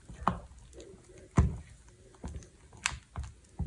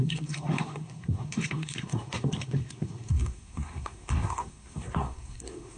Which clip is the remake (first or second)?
second